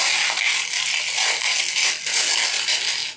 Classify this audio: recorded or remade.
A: recorded